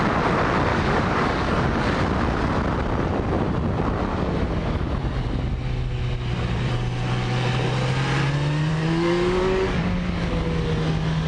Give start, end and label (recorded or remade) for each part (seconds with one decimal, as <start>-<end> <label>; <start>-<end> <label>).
0.0-0.7 recorded; 0.7-1.8 remade; 1.8-4.1 recorded; 4.1-4.9 remade; 4.9-8.7 recorded; 8.7-10.4 remade; 10.4-11.3 recorded